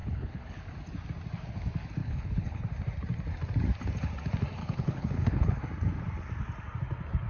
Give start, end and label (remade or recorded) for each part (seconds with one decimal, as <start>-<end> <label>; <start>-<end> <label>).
0.0-0.6 remade; 0.6-2.0 recorded; 2.0-2.6 remade; 2.6-4.6 recorded; 4.6-5.6 remade; 5.6-7.3 recorded